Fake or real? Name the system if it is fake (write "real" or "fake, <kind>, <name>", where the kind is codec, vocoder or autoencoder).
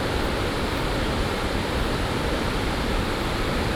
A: fake, vocoder, BigVGAN v2